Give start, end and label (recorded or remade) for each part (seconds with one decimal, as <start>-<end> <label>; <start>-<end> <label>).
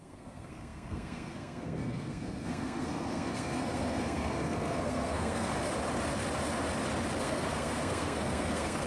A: 0.0-5.5 remade; 5.5-7.2 recorded; 7.2-8.9 remade